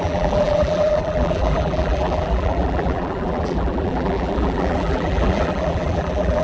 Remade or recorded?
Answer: remade